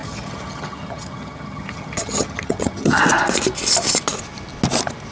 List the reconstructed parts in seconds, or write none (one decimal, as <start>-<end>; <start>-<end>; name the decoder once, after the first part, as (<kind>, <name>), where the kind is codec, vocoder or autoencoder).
0.0-3.0 (vocoder, HiFi-GAN)